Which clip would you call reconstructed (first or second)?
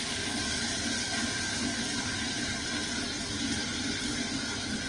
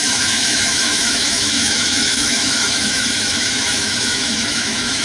second